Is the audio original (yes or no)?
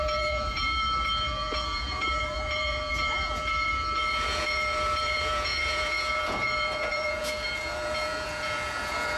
no